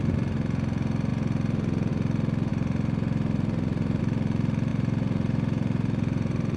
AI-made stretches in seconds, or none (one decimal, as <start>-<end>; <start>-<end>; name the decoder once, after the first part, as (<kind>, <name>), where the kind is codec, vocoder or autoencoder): 2.5-4.0 (vocoder, BigVGAN v2); 4.7-6.6